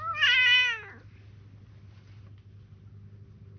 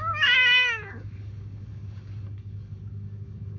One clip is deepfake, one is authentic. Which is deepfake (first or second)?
second